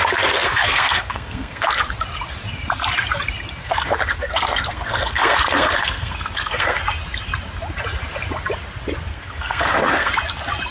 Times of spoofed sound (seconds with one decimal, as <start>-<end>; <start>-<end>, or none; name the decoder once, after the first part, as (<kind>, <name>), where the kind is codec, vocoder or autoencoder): 0.0-1.8 (codec, SNAC); 3.6-6.8; 9.1-10.1